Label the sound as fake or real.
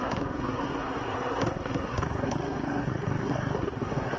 fake